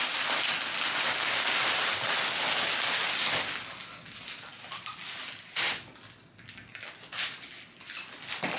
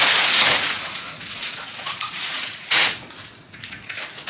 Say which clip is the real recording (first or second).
first